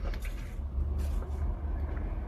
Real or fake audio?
real